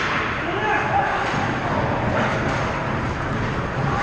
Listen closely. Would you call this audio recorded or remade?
recorded